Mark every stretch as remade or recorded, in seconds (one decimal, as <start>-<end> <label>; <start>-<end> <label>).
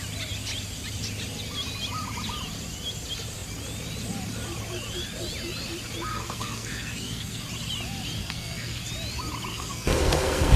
0.0-6.1 recorded; 6.1-7.4 remade; 7.4-8.2 recorded; 8.2-8.8 remade; 8.8-9.5 recorded; 9.5-10.6 remade